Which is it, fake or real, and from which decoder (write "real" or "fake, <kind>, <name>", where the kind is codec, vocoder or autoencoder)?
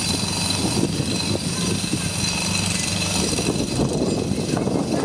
real